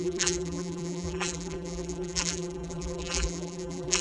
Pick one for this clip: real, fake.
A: fake